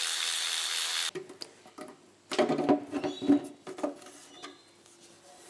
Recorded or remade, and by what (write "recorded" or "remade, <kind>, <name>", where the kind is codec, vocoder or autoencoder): recorded